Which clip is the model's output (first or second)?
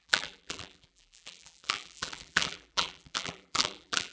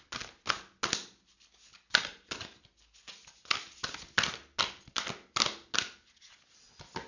first